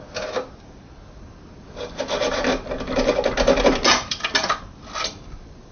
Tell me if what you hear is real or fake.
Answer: real